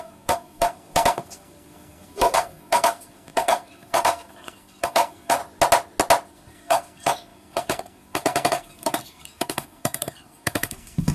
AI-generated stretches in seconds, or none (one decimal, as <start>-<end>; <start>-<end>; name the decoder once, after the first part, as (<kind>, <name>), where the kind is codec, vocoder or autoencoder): 0.0-5.4 (codec, SNAC); 6.3-11.1